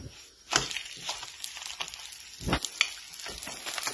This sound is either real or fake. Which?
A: real